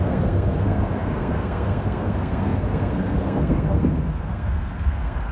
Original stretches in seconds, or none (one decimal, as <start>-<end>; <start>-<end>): none